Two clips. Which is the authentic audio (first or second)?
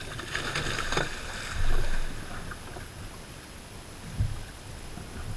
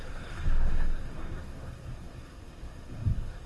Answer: first